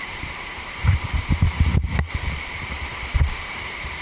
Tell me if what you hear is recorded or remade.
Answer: remade